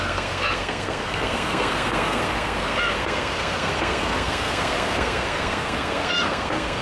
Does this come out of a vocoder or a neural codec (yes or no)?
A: yes